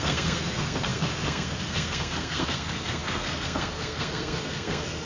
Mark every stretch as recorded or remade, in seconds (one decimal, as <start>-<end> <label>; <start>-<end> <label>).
0.0-5.1 remade